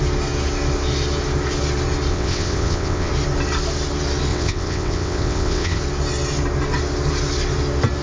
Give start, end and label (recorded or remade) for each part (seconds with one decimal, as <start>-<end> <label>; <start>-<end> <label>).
0.0-2.1 recorded; 2.1-3.1 remade; 3.1-4.3 recorded; 4.3-5.8 remade; 5.8-8.0 recorded

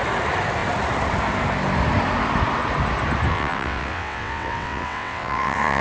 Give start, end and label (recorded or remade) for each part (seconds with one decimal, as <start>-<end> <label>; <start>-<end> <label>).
0.0-3.3 recorded; 3.3-5.8 remade